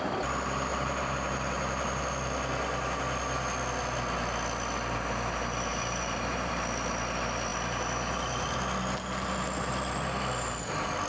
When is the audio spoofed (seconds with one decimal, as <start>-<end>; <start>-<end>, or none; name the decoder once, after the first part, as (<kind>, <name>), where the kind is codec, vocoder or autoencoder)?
0.7-2.0 (vocoder, BigVGAN v2); 5.7-6.5